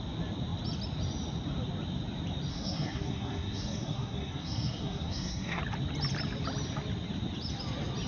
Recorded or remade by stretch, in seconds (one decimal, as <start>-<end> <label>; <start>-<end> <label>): 0.0-2.5 recorded; 2.5-5.6 remade; 5.6-8.1 recorded